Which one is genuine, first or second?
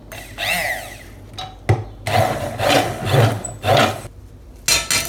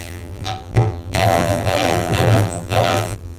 first